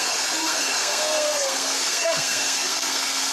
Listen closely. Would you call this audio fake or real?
fake